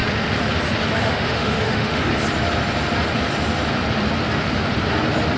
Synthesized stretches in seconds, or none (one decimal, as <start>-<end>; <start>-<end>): 1.0-2.1

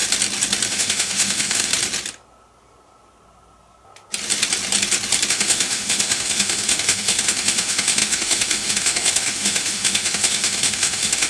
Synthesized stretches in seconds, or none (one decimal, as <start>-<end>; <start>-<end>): 0.7-1.7; 5.3-11.3

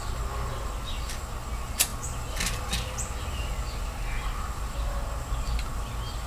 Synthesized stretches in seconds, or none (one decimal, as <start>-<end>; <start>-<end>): none

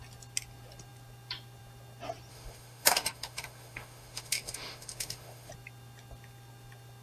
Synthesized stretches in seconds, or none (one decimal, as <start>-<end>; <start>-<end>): 2.3-5.5

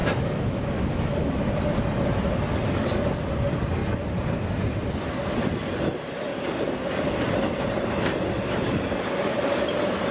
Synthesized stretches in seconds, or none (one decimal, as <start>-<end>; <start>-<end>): 0.0-1.5

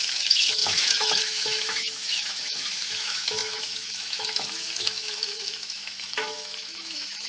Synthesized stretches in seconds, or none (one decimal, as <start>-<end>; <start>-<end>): 0.0-7.3

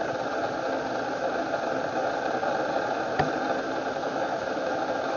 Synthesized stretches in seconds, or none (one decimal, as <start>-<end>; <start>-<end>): 4.0-5.2

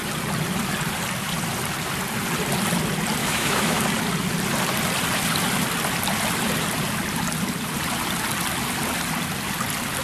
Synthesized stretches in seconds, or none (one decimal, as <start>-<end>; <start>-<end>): 3.2-3.8